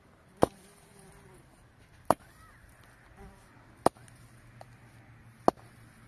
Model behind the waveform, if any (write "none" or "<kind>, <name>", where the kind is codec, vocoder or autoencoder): none